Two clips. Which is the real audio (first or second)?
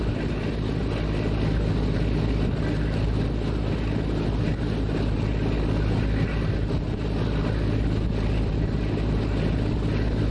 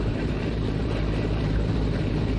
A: first